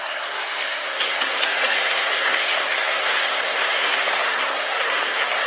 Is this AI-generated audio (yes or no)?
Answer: yes